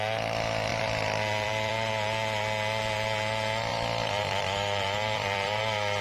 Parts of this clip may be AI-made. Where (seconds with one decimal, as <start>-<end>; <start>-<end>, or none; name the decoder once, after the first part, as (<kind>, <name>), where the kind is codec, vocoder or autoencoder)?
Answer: 0.7-1.9 (vocoder, BigVGAN v2); 3.7-5.6